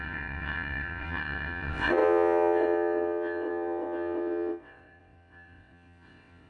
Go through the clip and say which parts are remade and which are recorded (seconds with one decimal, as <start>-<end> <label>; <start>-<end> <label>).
0.0-6.5 remade